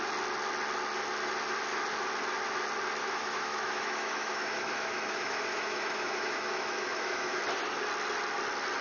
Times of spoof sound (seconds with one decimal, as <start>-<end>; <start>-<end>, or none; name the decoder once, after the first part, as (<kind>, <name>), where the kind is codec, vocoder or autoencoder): 3.0-7.4 (autoencoder, DAC-VAE)

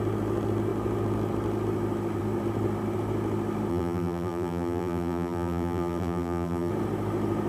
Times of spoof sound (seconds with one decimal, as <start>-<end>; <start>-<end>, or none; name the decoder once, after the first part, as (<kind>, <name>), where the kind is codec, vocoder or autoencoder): 3.7-6.7 (vocoder, BigVGAN v2)

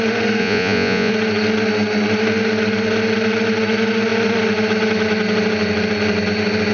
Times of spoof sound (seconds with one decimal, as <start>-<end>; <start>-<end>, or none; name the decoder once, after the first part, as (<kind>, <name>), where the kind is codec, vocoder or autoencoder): 0.4-1.1 (vocoder, Vocos)

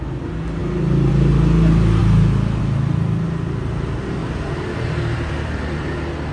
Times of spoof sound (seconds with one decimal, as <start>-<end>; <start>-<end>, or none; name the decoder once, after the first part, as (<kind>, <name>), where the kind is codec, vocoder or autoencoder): 4.2-6.3 (vocoder, BigVGAN v2)

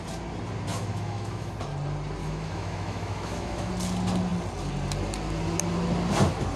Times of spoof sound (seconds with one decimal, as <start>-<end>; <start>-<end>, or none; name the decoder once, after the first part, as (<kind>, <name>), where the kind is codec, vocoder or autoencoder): 0.7-1.5 (autoencoder, DAC-VAE); 2.2-3.7